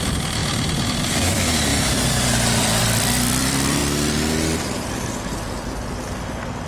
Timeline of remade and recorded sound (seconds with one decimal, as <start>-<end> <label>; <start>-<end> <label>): 0.0-0.4 remade; 0.4-1.1 recorded; 1.1-3.8 remade; 3.8-6.7 recorded